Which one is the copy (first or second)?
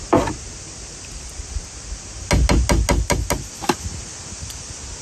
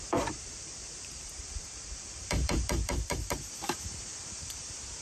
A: second